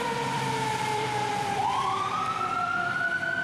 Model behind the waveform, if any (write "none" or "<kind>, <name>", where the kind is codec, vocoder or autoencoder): vocoder, BigVGAN v2